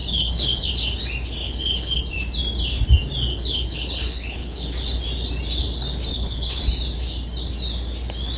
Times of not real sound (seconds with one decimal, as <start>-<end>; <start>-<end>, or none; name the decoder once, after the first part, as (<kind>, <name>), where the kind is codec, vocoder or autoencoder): 0.0-0.7 (codec, HILCodec); 1.4-2.0; 3.3-4.7; 6.1-6.6